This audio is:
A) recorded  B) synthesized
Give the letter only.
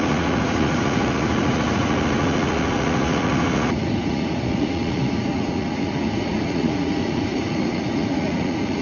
B